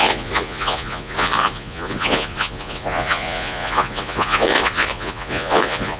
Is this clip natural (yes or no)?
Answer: no